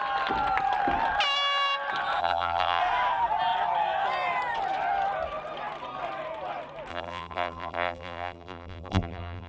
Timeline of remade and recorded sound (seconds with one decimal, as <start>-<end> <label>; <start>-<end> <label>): 0.0-2.2 recorded; 2.2-2.8 remade; 2.8-6.9 recorded; 6.9-9.5 remade